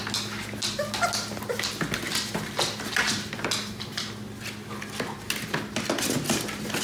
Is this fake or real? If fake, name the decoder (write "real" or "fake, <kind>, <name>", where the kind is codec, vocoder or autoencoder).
real